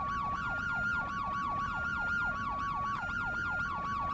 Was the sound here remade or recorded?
recorded